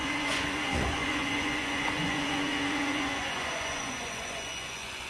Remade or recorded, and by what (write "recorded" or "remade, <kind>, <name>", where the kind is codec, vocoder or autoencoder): remade, vocoder, Vocos